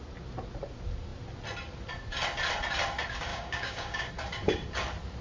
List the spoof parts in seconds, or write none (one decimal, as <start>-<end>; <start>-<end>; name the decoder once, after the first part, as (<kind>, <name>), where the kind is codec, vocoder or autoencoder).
3.3-4.1 (codec, DAC)